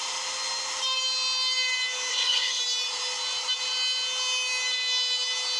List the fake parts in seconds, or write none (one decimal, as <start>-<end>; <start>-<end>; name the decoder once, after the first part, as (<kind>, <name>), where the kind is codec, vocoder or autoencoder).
2.1-2.6 (codec, HILCodec)